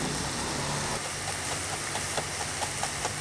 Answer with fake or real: real